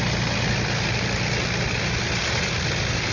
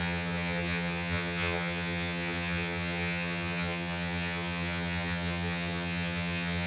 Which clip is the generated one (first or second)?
second